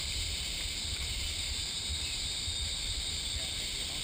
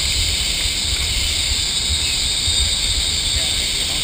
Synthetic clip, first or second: first